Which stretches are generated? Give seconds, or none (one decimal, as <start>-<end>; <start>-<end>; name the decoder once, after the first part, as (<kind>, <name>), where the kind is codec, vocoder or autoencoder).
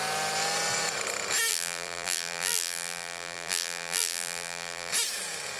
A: 1.5-4.9 (vocoder, BigVGAN v2)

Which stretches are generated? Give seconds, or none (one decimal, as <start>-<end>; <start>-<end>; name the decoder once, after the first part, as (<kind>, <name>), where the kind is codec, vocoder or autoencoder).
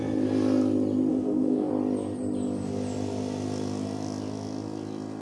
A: 1.1-1.7 (autoencoder, DAC-VAE)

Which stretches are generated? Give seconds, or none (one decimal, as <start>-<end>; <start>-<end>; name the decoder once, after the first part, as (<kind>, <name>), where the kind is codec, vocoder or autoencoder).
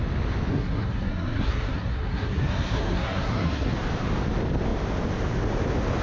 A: 0.5-3.7 (codec, SNAC)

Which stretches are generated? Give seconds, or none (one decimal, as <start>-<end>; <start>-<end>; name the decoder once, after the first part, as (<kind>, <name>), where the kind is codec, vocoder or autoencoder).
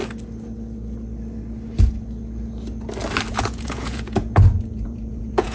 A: 3.3-5.5 (vocoder, Vocos)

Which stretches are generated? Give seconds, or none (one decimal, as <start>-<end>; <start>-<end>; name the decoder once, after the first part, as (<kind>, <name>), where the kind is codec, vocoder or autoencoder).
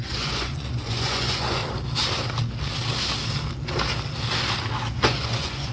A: 0.0-1.6 (vocoder, Vocos); 4.9-5.7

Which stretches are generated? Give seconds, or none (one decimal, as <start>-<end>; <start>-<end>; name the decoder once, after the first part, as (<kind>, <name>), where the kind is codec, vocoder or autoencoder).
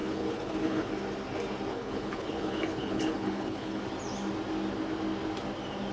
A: 0.0-0.9 (codec, HILCodec); 1.7-3.8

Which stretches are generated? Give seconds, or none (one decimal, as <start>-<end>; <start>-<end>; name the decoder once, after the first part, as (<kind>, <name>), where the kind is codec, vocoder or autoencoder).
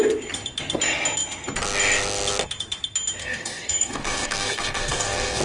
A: 3.2-5.4 (codec, DAC)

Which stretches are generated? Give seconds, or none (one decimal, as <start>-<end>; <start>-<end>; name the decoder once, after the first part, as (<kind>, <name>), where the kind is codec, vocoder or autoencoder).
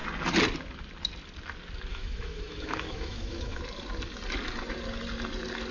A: 1.9-3.6 (autoencoder, DAC-VAE)